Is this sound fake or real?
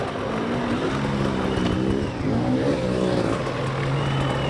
real